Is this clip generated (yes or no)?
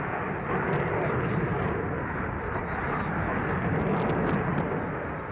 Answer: no